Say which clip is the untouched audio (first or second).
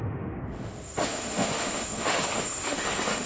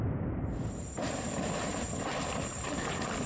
second